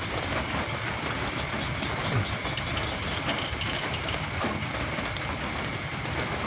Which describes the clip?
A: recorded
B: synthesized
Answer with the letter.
A